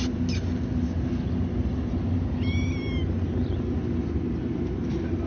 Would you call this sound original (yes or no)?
yes